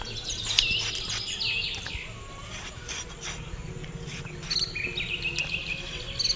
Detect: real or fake real